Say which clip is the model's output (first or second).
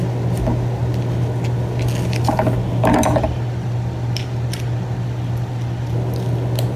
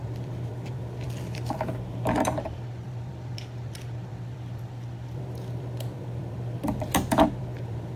second